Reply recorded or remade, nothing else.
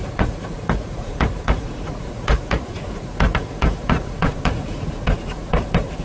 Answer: remade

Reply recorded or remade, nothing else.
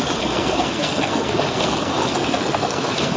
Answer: remade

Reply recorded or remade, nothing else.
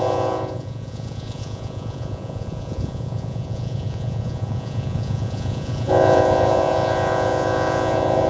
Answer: remade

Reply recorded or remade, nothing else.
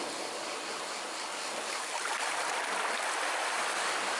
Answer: recorded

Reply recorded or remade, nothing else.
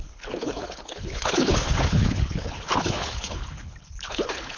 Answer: remade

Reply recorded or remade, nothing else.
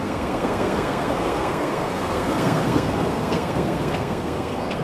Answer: remade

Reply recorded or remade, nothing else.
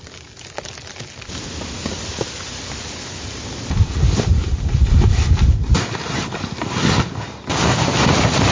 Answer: recorded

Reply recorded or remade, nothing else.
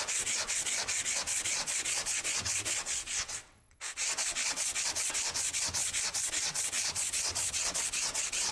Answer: remade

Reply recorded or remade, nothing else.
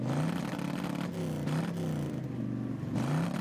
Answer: recorded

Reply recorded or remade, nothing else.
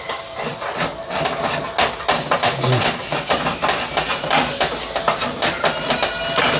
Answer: recorded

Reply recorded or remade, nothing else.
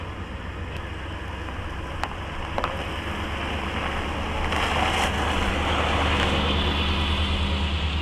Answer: recorded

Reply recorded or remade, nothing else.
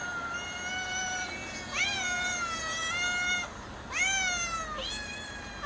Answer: recorded